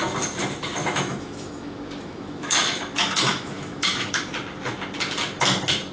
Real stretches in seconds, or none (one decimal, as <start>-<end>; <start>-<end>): 0.0-0.8; 4.3-5.9